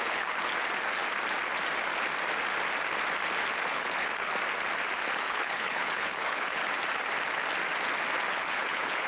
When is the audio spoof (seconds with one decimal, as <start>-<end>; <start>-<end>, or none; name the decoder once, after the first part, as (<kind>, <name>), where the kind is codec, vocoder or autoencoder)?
0.0-0.5 (codec, HILCodec); 3.7-4.3; 5.3-6.6; 8.3-9.1